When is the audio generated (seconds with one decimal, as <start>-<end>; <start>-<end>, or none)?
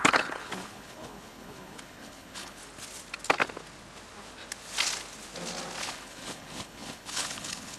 0.0-2.6; 5.8-7.8